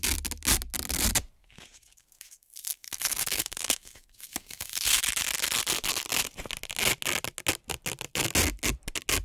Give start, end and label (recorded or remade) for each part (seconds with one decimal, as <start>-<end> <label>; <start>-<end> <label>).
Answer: 0.0-1.4 recorded; 1.4-5.0 remade; 5.0-9.2 recorded